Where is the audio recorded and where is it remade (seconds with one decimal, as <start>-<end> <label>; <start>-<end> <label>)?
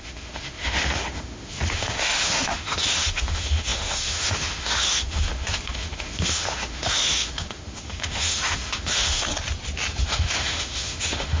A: 0.0-9.3 remade; 9.3-10.0 recorded; 10.0-11.4 remade